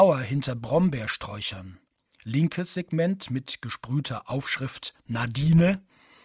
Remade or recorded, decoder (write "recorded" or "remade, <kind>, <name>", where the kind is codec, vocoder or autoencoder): recorded